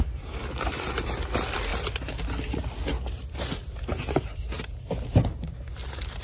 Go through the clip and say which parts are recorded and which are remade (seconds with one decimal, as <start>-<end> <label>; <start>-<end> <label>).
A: 0.0-6.2 remade